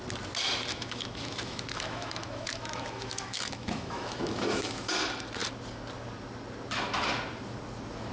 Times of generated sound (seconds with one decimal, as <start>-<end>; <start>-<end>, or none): 0.7-4.9